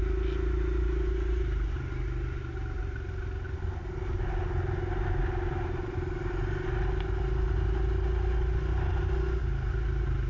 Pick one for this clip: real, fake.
real